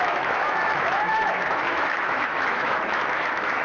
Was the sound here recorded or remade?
remade